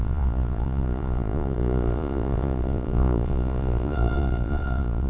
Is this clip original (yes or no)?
no